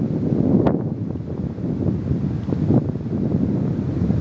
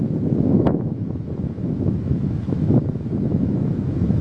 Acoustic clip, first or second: first